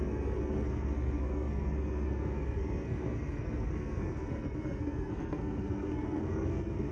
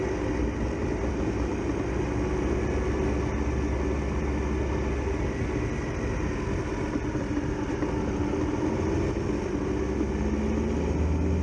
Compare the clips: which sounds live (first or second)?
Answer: second